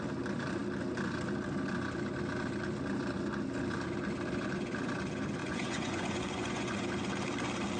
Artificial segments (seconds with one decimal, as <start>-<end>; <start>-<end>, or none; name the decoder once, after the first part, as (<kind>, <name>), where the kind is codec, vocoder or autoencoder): 5.4-6.9 (vocoder, Vocos)